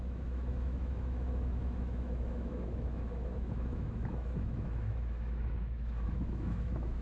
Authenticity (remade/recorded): remade